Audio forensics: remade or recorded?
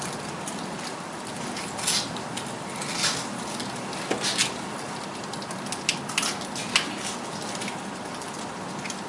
recorded